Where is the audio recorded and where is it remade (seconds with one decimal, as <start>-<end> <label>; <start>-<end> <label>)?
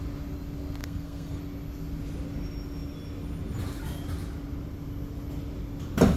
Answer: 0.0-0.8 recorded; 0.8-1.4 remade; 1.4-6.2 recorded